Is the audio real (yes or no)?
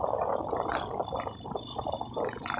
yes